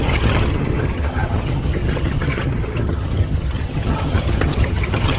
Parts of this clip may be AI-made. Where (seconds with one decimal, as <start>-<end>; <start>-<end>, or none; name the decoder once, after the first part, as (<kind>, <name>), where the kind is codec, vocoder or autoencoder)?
0.0-5.2 (vocoder, HiFi-GAN)